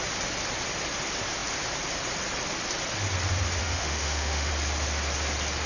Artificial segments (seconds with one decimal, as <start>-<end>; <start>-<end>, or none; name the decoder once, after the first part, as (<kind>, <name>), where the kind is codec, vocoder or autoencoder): 3.6-4.5 (autoencoder, DAC-VAE)